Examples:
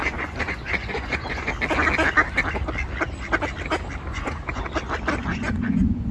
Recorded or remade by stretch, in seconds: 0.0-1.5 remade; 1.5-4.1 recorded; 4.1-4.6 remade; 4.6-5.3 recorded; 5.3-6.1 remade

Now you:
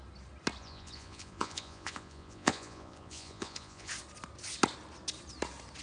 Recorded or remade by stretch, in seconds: 0.0-0.6 recorded; 0.6-3.9 remade; 3.9-5.8 recorded